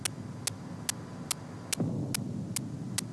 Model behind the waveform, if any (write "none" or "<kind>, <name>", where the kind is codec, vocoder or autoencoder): none